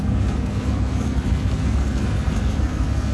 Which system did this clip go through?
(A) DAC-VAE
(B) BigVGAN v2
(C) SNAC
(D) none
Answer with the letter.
C